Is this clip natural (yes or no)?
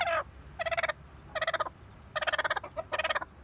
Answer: yes